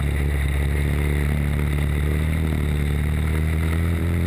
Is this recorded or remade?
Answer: remade